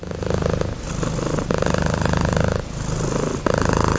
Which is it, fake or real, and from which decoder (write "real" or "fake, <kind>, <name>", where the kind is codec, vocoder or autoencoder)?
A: real